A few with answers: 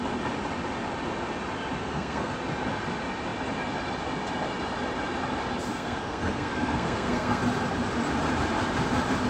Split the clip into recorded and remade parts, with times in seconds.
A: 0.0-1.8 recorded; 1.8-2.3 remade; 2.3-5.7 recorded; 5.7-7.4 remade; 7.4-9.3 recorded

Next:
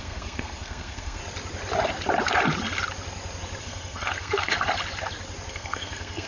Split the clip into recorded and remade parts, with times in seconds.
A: 0.0-1.2 remade; 1.2-3.6 recorded; 3.6-4.5 remade; 4.5-5.5 recorded; 5.5-6.3 remade

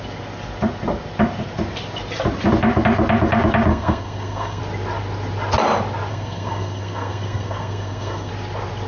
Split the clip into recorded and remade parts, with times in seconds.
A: 0.0-3.7 recorded; 3.7-4.6 remade; 4.6-6.1 recorded; 6.1-8.3 remade; 8.3-8.9 recorded

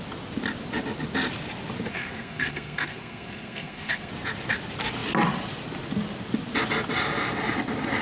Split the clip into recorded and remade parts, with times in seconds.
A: 0.0-1.9 recorded; 1.9-4.1 remade; 4.1-8.0 recorded

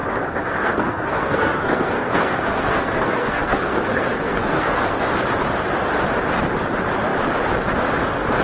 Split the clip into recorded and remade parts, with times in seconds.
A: 0.0-5.0 remade; 5.0-8.4 recorded

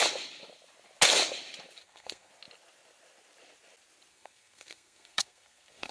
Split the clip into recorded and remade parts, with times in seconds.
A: 0.0-1.8 recorded; 1.8-2.3 remade; 2.3-4.1 recorded; 4.1-5.9 remade

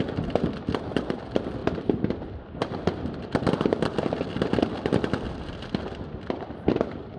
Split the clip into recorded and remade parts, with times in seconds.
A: 0.0-7.2 recorded

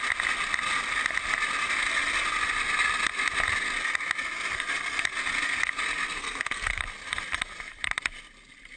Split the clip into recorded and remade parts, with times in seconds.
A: 0.0-6.2 recorded; 6.2-6.8 remade; 6.8-8.8 recorded